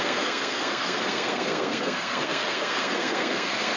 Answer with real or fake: fake